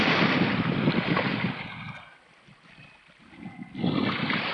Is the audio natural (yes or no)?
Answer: yes